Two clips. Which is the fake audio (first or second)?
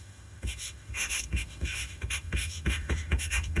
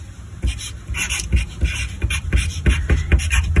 first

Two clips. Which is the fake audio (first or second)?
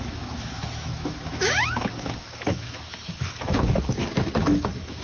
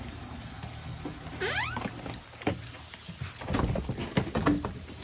first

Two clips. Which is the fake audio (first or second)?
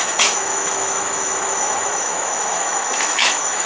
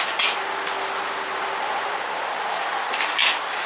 first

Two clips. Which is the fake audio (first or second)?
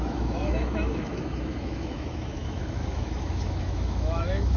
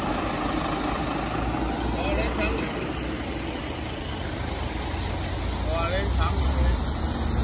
first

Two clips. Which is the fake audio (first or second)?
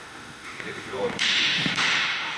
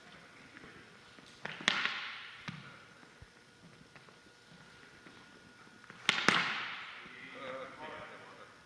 first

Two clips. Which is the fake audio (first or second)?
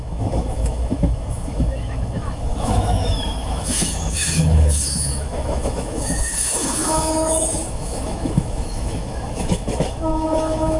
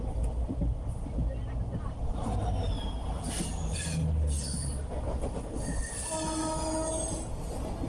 first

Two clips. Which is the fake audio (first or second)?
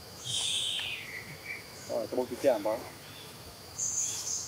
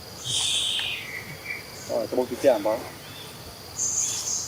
first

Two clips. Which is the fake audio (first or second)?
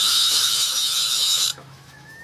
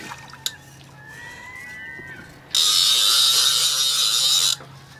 first